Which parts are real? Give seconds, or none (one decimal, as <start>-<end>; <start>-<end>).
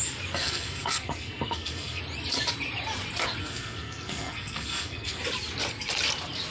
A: 0.0-0.4; 2.0-3.4; 5.2-6.5